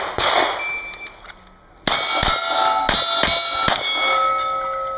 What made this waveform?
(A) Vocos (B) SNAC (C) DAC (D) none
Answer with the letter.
D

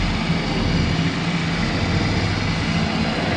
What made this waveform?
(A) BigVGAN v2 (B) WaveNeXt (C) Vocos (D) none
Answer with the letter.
D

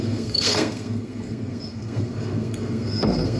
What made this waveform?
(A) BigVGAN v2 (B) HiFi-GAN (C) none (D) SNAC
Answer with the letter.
D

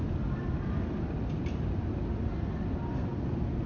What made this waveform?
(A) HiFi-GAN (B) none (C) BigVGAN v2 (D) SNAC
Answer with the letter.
B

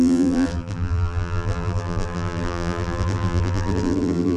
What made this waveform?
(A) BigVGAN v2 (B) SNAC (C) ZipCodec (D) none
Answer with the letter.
A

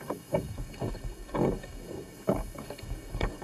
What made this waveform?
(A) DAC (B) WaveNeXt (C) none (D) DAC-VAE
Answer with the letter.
A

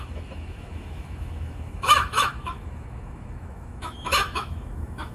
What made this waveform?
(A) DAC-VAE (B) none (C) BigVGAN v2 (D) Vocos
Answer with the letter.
A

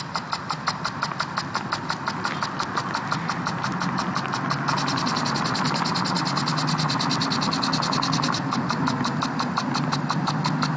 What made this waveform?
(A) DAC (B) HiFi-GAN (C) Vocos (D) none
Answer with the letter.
D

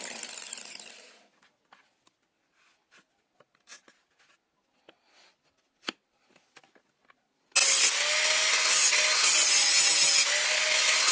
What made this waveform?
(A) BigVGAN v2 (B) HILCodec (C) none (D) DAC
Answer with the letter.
C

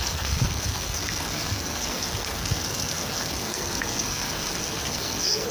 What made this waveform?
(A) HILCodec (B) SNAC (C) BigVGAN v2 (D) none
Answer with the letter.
B